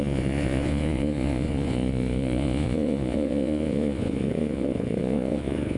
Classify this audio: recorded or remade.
remade